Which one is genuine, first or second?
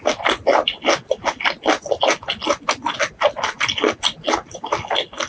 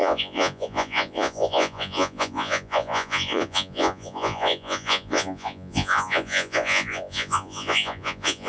first